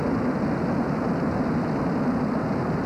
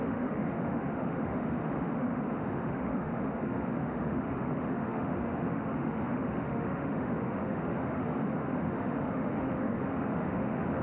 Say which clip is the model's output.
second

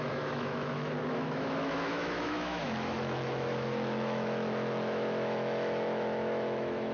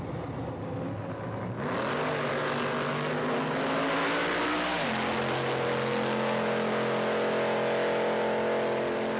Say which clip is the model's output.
first